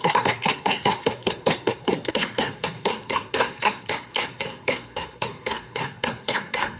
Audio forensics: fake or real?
fake